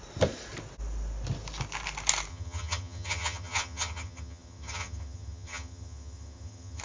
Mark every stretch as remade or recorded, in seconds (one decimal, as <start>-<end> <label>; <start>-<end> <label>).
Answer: 0.0-2.3 recorded; 2.3-6.8 remade

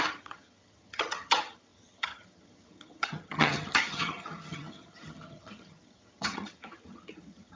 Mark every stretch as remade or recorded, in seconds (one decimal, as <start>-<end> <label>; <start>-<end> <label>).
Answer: 0.0-7.5 remade

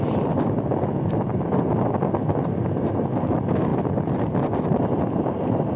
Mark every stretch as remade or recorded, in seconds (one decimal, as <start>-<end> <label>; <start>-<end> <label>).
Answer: 0.0-5.8 recorded

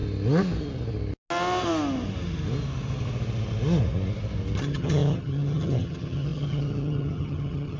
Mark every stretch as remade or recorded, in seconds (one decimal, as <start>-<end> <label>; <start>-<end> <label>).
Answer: 0.0-4.6 recorded; 4.6-7.8 remade

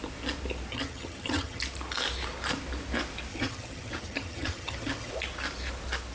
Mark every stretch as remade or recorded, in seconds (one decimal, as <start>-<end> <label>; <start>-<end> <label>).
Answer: 0.0-0.7 recorded; 0.7-1.6 remade; 1.6-3.3 recorded; 3.3-5.1 remade; 5.1-6.1 recorded

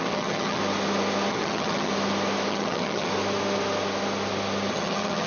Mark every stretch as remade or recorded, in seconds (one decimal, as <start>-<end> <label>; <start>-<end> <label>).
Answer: 0.0-0.6 remade; 0.6-1.3 recorded; 1.3-1.9 remade; 1.9-2.5 recorded; 2.5-3.1 remade; 3.1-4.7 recorded; 4.7-5.3 remade

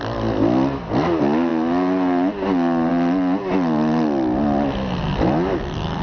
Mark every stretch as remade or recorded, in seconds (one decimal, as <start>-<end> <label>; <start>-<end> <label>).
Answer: 0.0-6.0 recorded